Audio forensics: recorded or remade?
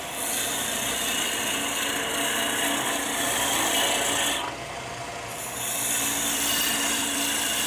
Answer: recorded